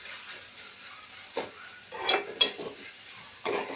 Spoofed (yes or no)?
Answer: no